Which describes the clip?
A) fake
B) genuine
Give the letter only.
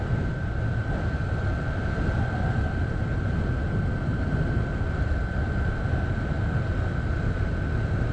B